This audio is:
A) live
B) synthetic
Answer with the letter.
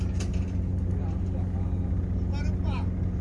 A